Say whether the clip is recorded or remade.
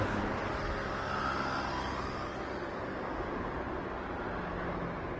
recorded